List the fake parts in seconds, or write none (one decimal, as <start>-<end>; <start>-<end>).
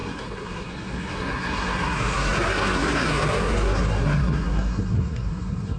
0.0-5.8